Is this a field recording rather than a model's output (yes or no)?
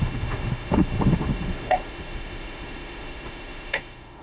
no